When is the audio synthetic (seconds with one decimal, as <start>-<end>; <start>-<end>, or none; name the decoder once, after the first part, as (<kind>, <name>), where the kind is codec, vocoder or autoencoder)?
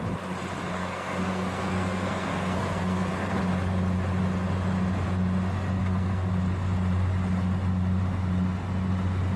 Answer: 0.7-3.4 (codec, SNAC); 5.8-6.3